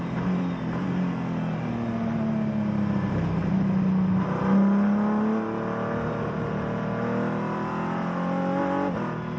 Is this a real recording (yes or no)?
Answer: yes